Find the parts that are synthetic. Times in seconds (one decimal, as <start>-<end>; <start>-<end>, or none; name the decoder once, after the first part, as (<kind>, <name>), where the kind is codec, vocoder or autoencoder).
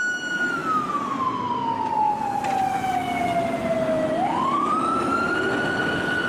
none